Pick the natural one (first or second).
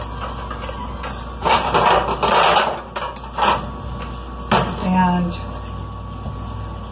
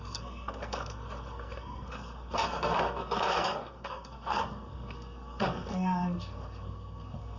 first